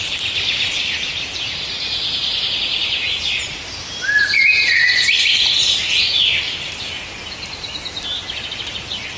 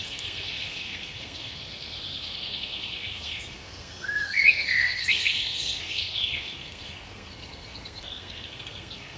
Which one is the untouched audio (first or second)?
first